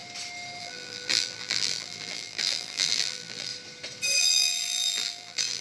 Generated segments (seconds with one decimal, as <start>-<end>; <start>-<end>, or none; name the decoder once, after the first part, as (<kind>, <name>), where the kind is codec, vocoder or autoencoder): 0.6-3.5 (vocoder, BigVGAN v2); 4.2-5.6